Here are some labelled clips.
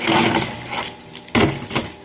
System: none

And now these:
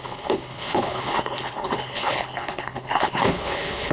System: codec, HILCodec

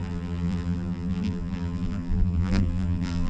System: vocoder, BigVGAN v2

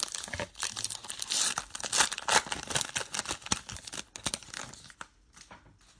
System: none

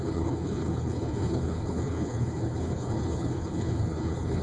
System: codec, HILCodec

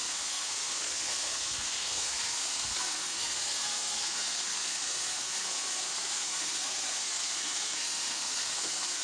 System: codec, SNAC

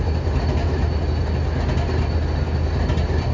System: none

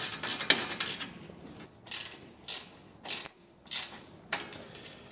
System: none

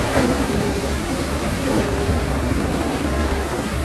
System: codec, SNAC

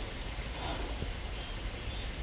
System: none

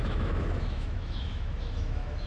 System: autoencoder, DAC-VAE